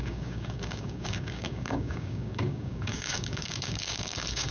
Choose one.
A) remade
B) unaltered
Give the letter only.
A